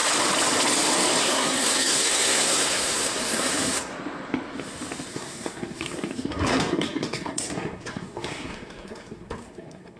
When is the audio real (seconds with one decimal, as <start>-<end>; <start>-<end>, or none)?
0.0-1.2; 3.9-5.1